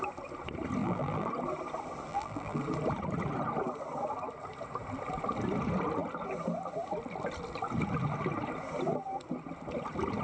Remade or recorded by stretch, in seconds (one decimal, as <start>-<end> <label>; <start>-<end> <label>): 0.0-0.8 recorded; 0.8-1.3 remade; 1.3-2.1 recorded; 2.1-2.6 remade; 2.6-10.2 recorded